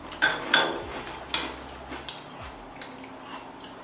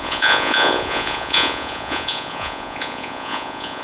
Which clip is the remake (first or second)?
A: second